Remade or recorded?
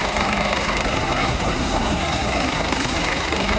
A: remade